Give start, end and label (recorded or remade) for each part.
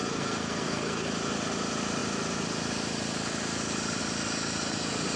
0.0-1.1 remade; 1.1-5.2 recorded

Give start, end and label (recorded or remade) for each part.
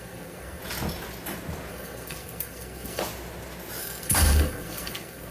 0.0-0.6 remade; 0.6-1.7 recorded; 1.7-3.0 remade; 3.0-3.8 recorded; 3.8-5.3 remade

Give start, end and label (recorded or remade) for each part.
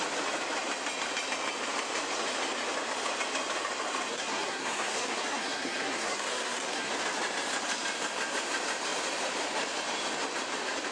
0.0-4.1 recorded; 4.1-6.9 remade; 6.9-10.9 recorded